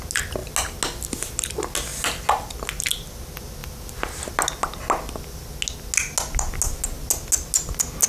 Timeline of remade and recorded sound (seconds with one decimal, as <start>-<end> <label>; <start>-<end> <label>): 0.0-8.1 recorded